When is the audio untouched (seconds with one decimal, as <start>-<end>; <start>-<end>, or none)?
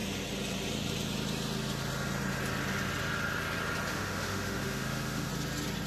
0.0-3.9; 5.3-5.9